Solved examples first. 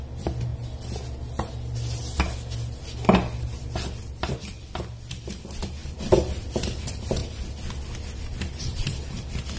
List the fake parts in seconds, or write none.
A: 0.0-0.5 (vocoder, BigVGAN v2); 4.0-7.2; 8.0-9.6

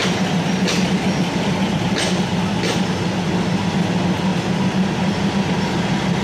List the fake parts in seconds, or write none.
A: none

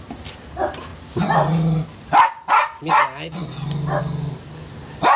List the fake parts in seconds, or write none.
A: none

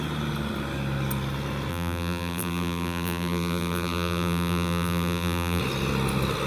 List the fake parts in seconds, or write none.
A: 1.7-5.6 (vocoder, BigVGAN v2)

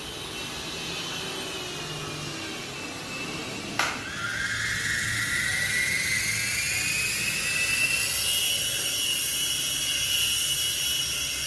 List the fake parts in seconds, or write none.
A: none

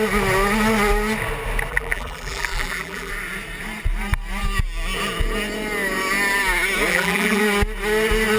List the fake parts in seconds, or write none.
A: 1.7-3.1 (vocoder, BigVGAN v2); 6.9-7.4